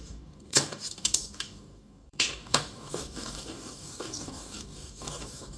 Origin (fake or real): fake